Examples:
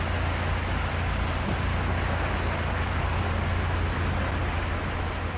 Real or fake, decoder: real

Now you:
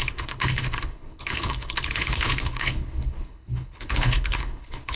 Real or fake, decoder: fake, codec, HILCodec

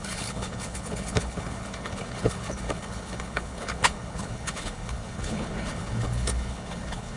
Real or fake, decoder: fake, codec, HILCodec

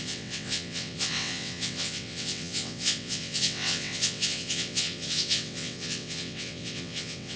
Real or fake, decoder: fake, vocoder, WaveNeXt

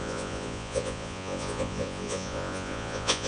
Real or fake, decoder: fake, vocoder, Vocos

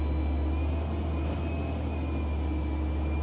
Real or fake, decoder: real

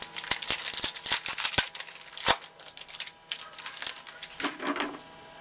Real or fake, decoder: real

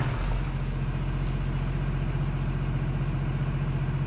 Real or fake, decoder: real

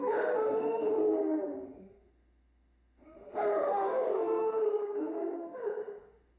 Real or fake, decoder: fake, autoencoder, DAC-VAE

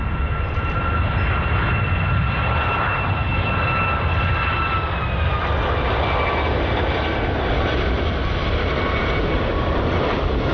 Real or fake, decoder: real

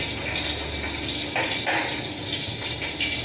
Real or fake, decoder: real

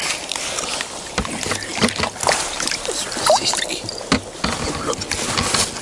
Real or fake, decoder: real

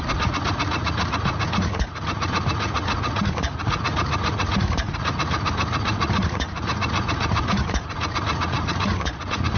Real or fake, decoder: fake, vocoder, Vocos